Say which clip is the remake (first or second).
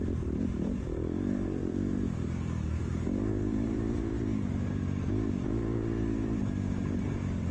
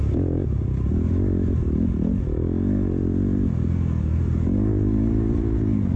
first